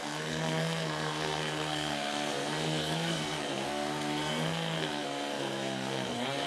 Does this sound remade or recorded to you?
remade